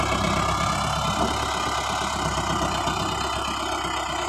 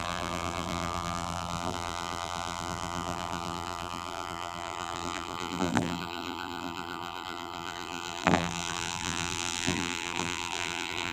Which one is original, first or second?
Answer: first